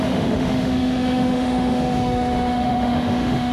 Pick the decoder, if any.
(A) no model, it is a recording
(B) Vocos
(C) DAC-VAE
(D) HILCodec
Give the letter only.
C